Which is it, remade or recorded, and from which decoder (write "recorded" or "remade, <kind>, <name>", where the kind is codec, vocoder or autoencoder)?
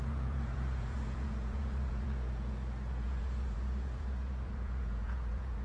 remade, vocoder, Vocos